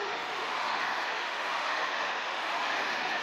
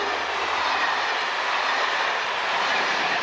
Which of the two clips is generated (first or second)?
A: first